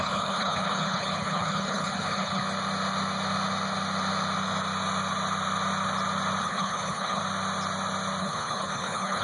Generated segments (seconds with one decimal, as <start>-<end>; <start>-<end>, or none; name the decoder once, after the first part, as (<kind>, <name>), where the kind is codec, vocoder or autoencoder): 0.0-2.4 (codec, HILCodec); 6.4-7.2; 8.2-9.2